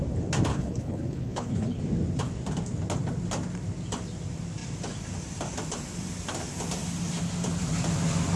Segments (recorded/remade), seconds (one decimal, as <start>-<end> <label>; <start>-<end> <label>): 0.0-0.5 recorded; 0.5-1.8 remade; 1.8-8.4 recorded